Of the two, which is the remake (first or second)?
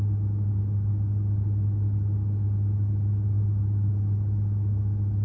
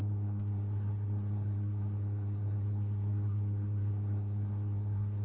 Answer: second